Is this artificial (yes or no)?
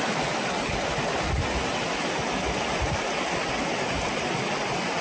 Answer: no